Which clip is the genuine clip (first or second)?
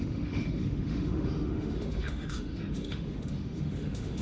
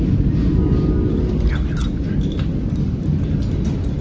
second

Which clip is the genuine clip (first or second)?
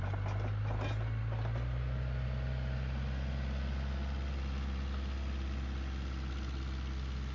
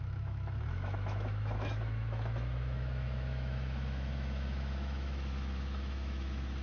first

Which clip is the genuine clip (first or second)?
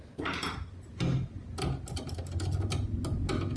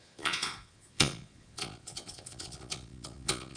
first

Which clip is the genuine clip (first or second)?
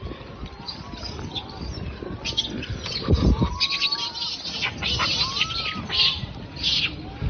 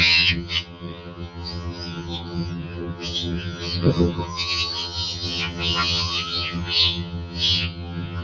first